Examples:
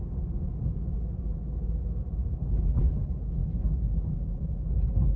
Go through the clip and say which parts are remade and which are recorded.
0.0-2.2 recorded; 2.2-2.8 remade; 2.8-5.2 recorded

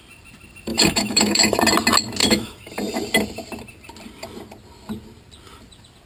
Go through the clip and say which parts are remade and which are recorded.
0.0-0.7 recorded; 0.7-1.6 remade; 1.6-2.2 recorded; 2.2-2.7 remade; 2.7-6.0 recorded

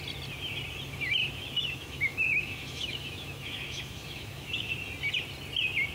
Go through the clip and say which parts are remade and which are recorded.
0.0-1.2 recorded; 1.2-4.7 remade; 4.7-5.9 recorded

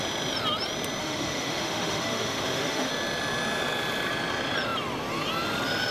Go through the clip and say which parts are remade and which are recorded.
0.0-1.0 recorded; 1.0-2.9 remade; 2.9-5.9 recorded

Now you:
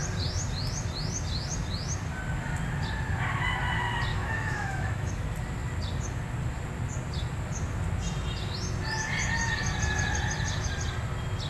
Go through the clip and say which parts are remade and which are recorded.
0.0-4.1 recorded; 4.1-5.1 remade; 5.1-11.5 recorded